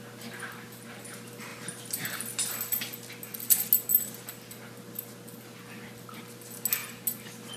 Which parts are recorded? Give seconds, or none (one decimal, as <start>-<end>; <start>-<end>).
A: 0.0-7.6